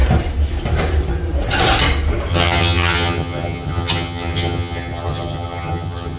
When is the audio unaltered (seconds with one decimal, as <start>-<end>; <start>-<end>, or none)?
0.0-2.3